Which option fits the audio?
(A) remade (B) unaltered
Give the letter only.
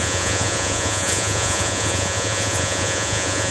A